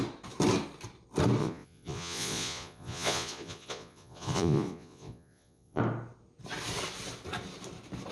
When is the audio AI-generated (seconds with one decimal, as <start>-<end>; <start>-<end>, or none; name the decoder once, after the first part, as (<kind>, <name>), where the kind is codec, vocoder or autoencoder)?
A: 1.4-5.8 (vocoder, Vocos)